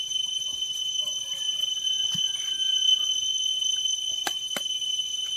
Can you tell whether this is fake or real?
real